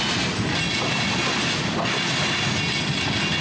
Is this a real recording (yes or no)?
yes